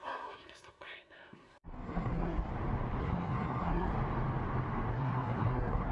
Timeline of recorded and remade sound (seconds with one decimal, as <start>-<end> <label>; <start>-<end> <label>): 0.0-2.5 remade; 2.5-3.0 recorded; 3.0-3.9 remade; 3.9-4.9 recorded; 4.9-5.9 remade